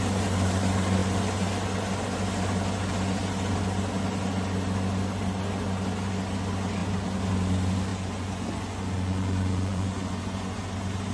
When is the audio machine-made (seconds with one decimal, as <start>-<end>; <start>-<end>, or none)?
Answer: 7.9-10.6